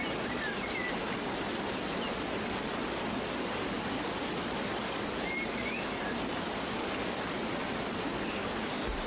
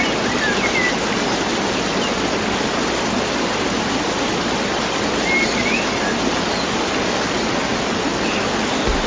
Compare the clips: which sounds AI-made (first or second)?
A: first